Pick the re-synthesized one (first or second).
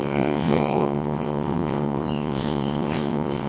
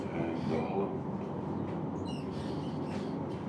first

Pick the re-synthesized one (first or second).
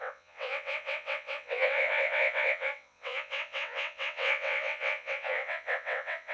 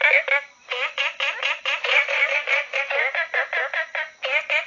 first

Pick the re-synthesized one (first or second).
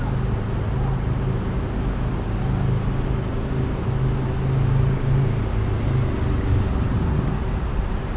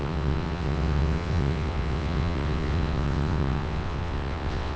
second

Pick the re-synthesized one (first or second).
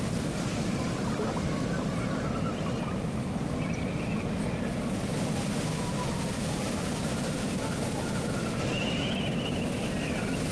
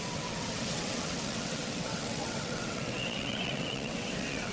second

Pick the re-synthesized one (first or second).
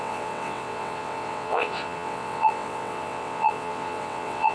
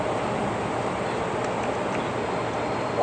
first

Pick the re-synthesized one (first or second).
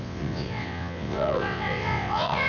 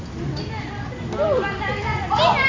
first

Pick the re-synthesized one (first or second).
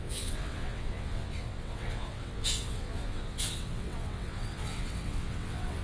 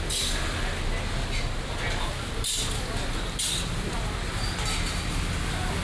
first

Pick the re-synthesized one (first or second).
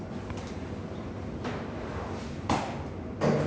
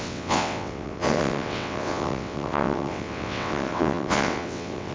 second